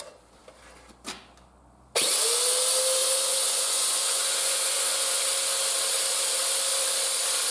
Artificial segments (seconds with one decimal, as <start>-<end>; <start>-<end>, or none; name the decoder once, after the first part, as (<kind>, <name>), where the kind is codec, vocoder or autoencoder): 3.0-5.2 (vocoder, Vocos)